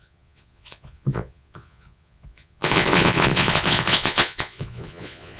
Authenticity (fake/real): fake